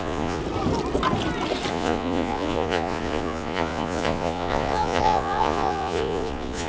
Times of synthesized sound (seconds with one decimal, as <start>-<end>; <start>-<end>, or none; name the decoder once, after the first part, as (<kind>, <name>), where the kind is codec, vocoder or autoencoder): 0.0-0.4 (vocoder, Vocos); 1.7-6.7